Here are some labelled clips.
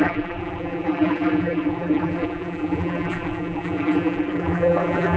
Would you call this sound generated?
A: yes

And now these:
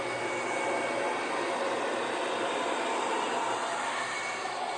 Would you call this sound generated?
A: yes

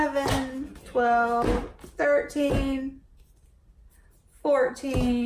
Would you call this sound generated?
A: no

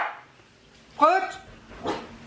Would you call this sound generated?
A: no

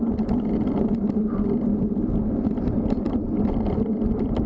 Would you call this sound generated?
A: yes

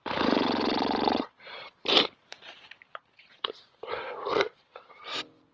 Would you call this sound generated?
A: yes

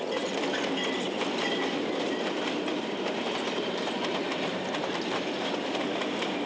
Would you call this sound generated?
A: yes